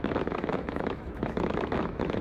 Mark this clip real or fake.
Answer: fake